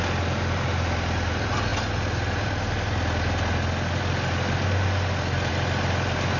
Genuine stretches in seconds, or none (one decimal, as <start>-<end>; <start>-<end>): 0.0-6.4

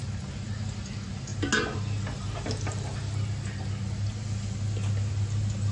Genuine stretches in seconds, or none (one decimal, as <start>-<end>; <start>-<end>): 0.0-5.7

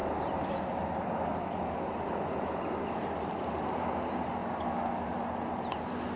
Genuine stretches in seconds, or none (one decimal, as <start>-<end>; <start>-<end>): 0.0-6.2

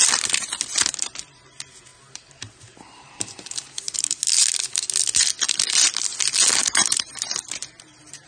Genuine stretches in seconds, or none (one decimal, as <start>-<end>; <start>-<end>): 0.0-1.9; 4.2-6.6; 7.1-8.3

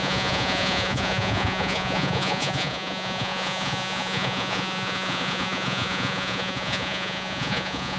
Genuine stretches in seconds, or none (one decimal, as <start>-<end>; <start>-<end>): none